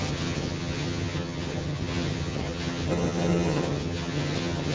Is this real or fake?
fake